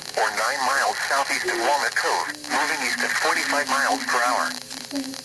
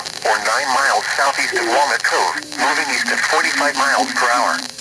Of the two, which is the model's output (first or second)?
second